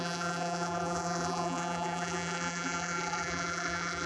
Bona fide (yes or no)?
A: no